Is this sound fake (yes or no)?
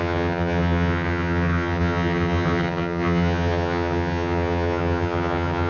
yes